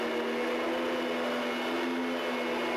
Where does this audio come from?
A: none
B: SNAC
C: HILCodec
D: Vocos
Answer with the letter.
A